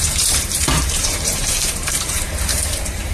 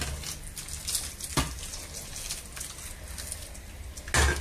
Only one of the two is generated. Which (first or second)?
first